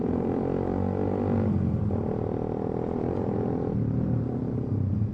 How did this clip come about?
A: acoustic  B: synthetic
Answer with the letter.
A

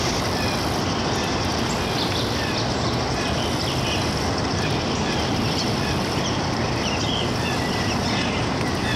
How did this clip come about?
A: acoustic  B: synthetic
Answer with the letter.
B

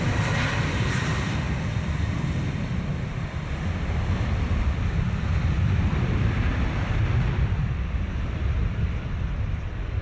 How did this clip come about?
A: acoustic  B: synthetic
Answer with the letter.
B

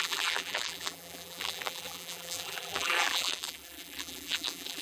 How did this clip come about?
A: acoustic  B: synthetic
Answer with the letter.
B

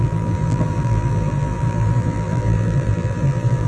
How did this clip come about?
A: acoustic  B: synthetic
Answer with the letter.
B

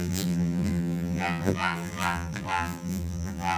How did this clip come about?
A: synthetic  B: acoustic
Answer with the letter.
A